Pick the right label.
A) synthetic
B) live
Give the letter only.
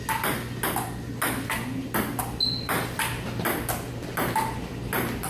B